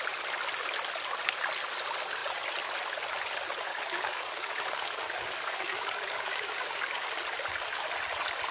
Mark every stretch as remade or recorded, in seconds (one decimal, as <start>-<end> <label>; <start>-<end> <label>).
0.0-3.7 recorded; 3.7-7.1 remade; 7.1-8.5 recorded